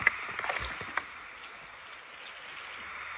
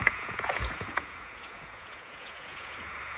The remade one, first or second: second